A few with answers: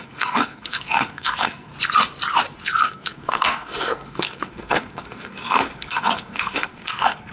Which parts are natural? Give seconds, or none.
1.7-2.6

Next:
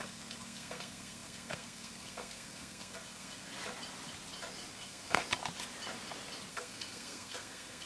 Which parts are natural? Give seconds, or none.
3.5-4.7; 5.2-6.5

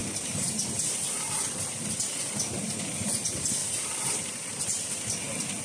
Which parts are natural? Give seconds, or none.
0.0-5.6

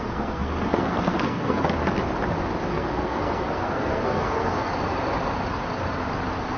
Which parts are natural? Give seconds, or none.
1.8-2.7; 4.7-6.6

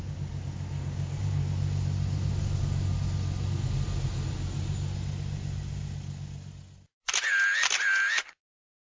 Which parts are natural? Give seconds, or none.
0.0-9.0

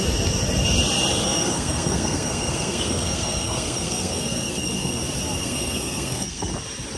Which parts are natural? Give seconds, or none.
0.0-1.2; 5.0-5.4; 6.5-7.0